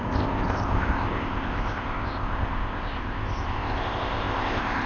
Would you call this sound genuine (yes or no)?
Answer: no